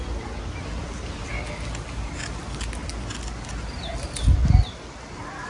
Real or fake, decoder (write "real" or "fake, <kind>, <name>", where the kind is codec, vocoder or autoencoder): real